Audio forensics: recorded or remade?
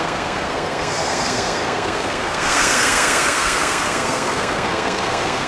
remade